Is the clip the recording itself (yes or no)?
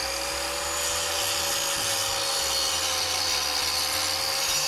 yes